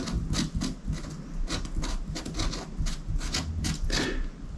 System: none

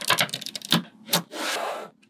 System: none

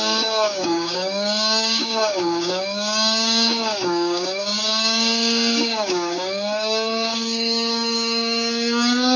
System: codec, DAC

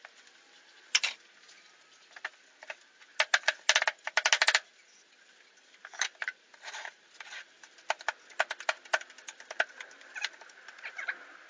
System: none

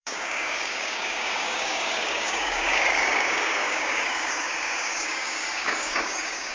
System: codec, DAC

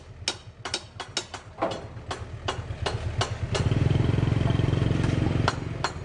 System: none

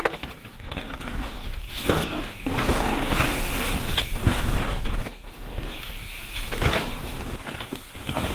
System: codec, DAC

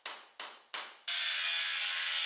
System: none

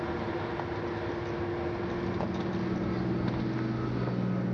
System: none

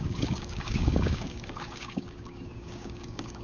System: codec, DAC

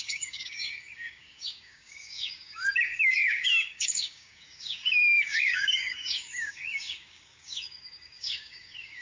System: codec, DAC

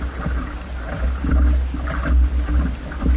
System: none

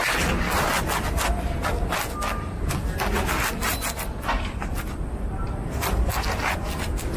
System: none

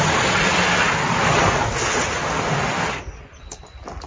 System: none